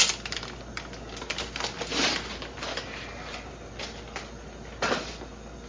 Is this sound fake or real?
real